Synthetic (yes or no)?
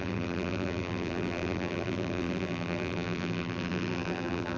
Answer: yes